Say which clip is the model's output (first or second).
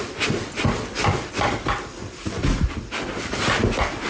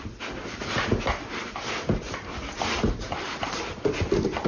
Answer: first